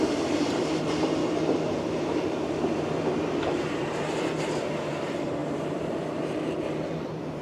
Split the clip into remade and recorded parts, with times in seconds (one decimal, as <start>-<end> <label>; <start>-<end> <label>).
0.0-7.4 remade